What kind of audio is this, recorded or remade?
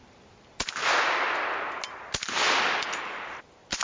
recorded